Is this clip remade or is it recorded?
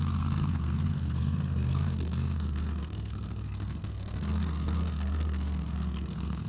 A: remade